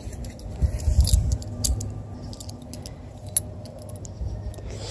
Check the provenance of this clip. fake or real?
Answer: real